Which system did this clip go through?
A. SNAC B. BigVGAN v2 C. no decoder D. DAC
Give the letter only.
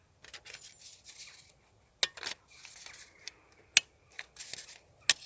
C